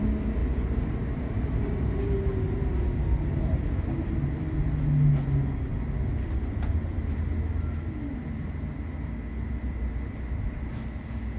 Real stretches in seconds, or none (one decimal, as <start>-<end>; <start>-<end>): 0.0-11.4